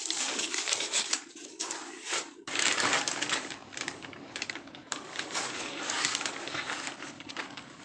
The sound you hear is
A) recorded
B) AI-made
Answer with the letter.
B